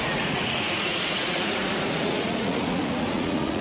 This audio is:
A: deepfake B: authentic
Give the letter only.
A